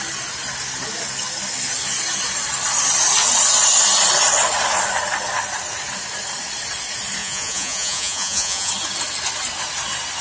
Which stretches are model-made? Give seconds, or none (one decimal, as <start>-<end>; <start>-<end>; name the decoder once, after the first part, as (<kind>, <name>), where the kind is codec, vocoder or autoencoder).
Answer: 7.2-8.7 (vocoder, Vocos)